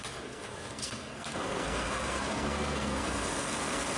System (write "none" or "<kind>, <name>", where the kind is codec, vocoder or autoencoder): codec, SNAC